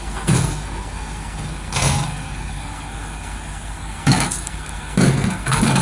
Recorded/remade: remade